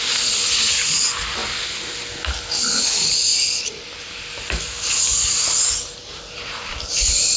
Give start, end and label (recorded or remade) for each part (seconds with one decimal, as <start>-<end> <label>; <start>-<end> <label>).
0.0-7.4 recorded